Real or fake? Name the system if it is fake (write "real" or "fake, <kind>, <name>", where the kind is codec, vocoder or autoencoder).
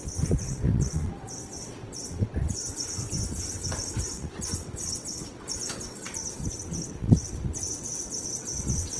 fake, vocoder, WaveNeXt